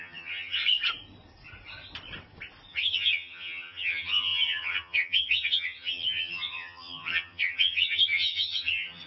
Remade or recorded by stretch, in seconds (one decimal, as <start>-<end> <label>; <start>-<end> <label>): 0.0-0.6 remade; 0.6-2.7 recorded; 2.7-9.1 remade